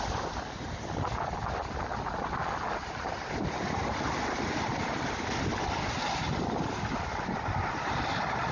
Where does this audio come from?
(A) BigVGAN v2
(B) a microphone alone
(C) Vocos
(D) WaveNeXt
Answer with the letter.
B